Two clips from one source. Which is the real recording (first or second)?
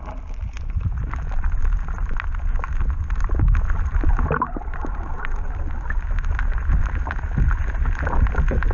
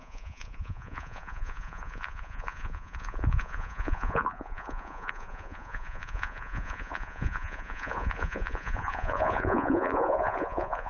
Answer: first